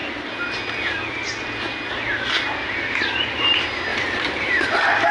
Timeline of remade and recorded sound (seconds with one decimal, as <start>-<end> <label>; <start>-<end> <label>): 0.0-3.9 recorded; 3.9-4.6 remade; 4.6-5.1 recorded